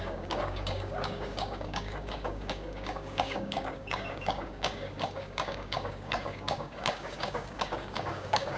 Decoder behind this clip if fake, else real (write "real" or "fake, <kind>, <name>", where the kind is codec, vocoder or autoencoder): fake, codec, DAC